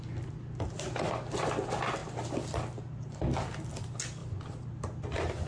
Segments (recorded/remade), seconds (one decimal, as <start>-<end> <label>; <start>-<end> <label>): 0.0-5.5 recorded

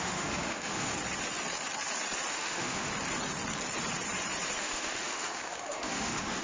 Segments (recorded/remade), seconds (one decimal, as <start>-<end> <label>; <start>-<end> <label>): 0.0-0.9 remade; 0.9-2.3 recorded; 2.3-2.9 remade; 2.9-4.6 recorded; 4.6-6.4 remade

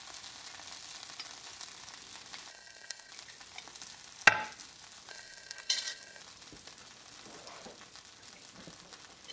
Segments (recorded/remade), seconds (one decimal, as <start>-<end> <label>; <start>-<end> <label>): 0.0-2.5 recorded; 2.5-3.1 remade; 3.1-5.1 recorded; 5.1-6.2 remade; 6.2-9.3 recorded

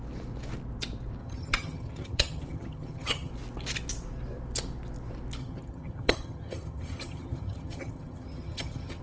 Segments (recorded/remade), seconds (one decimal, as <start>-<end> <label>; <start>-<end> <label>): 0.0-1.2 recorded; 1.2-3.3 remade; 3.3-5.4 recorded; 5.4-9.0 remade

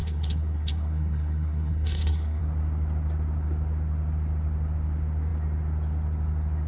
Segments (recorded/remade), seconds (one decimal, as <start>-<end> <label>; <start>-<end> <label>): 0.0-2.4 remade; 2.4-6.7 recorded

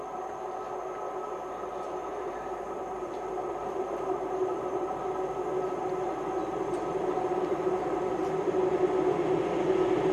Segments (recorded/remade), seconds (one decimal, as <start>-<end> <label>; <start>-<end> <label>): 0.0-2.1 recorded; 2.1-5.0 remade; 5.0-6.4 recorded; 6.4-8.0 remade; 8.0-10.1 recorded

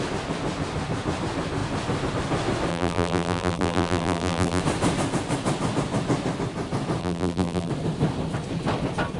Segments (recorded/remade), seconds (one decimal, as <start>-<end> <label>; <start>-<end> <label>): 0.0-2.7 recorded; 2.7-4.6 remade; 4.6-7.0 recorded; 7.0-7.7 remade; 7.7-9.2 recorded